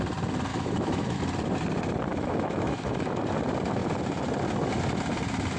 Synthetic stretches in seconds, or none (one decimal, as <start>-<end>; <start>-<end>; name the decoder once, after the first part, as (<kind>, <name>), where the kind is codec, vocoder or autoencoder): 0.5-1.2 (autoencoder, DAC-VAE); 2.1-3.2